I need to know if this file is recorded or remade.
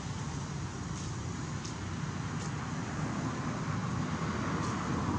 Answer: recorded